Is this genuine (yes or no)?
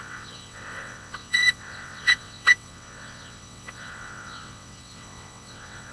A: no